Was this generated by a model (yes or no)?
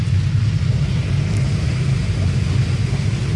no